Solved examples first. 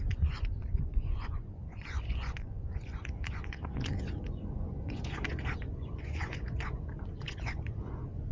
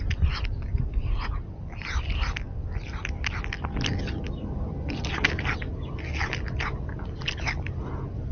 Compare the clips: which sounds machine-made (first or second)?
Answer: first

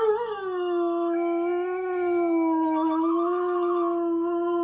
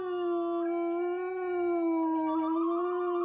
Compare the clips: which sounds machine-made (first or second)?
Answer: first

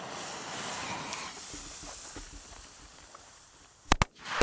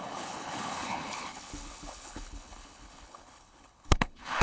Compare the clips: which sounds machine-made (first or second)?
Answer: second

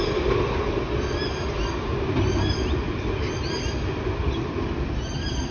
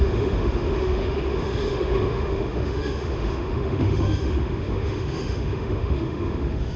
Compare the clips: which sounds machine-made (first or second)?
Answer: second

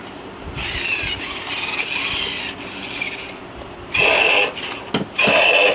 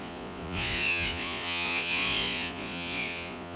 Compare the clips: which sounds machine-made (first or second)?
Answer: second